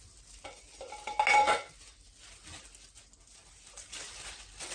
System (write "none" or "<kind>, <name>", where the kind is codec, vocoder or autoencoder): none